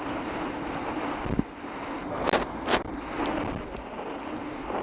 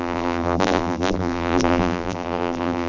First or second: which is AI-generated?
second